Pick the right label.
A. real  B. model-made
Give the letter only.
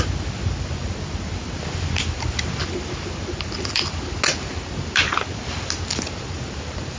A